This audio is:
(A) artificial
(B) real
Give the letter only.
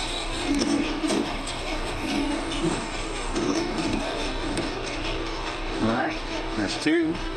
A